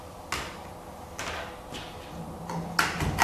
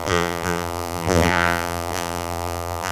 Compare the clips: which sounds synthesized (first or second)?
second